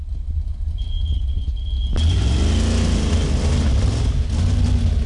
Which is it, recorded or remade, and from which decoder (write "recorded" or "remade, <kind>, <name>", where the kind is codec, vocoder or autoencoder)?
recorded